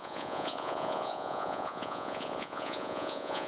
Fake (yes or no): yes